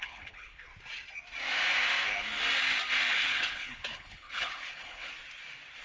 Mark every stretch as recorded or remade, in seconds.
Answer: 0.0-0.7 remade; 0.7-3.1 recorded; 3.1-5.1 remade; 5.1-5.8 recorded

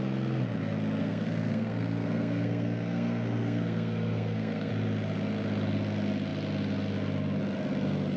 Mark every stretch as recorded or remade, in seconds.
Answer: 0.0-1.0 recorded; 1.0-4.7 remade; 4.7-8.2 recorded

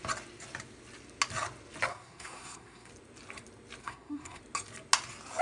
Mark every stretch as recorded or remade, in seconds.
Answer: 0.0-1.9 recorded; 1.9-2.9 remade; 2.9-3.8 recorded; 3.8-4.4 remade; 4.4-5.4 recorded

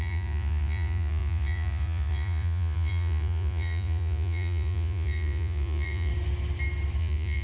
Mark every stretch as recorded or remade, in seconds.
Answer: 0.0-6.1 remade; 6.1-7.0 recorded; 7.0-7.4 remade

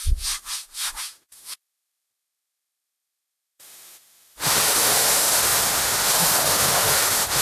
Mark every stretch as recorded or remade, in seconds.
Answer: 0.0-7.4 remade

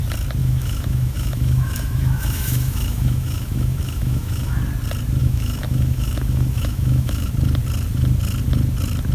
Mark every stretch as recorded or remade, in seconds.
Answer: 0.0-0.4 recorded; 0.4-4.6 remade; 4.6-5.2 recorded; 5.2-7.3 remade; 7.3-9.1 recorded

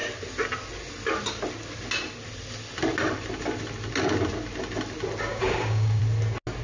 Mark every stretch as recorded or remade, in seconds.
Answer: 0.0-5.3 recorded; 5.3-6.0 remade; 6.0-6.6 recorded

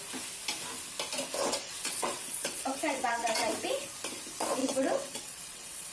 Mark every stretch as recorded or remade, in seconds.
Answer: 0.0-1.4 recorded; 1.4-3.5 remade; 3.5-4.6 recorded; 4.6-5.9 remade